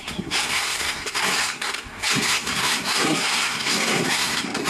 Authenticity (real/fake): fake